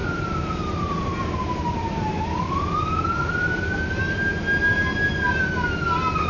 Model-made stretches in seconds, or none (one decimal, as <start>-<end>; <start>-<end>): 0.0-3.8